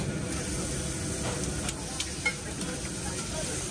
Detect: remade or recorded recorded